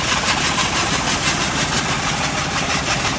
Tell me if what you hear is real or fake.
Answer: fake